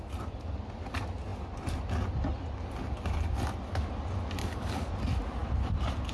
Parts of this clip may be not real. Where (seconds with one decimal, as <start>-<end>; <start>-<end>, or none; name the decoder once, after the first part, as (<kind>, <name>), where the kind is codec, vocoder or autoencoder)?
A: 4.4-4.9 (codec, DAC)